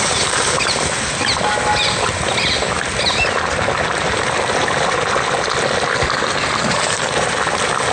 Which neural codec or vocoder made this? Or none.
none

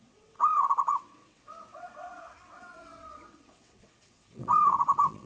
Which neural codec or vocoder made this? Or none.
vocoder, WaveNeXt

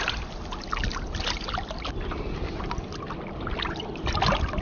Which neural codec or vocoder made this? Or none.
none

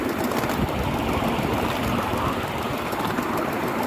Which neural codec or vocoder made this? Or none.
none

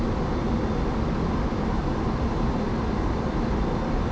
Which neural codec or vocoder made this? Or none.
none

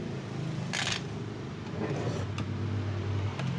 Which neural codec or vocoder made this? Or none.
none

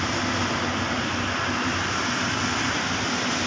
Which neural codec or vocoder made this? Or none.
none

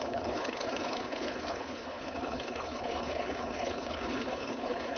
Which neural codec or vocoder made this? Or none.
codec, HILCodec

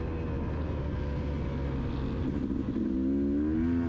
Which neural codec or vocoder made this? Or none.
none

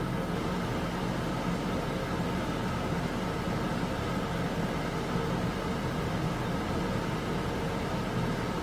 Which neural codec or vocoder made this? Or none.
none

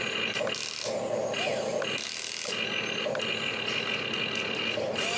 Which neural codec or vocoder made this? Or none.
none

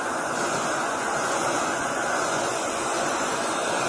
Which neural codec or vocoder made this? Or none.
vocoder, Vocos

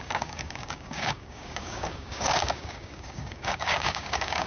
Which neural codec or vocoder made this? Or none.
codec, DAC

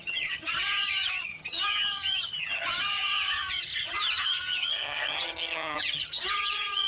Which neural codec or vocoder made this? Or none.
vocoder, HiFi-GAN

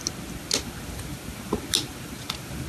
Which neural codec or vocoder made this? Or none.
none